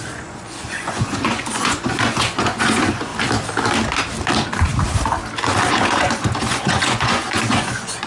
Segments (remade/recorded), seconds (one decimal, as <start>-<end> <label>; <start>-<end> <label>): 0.0-3.1 remade; 3.1-5.7 recorded; 5.7-8.1 remade